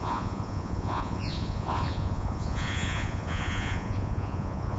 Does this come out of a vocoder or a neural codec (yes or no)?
yes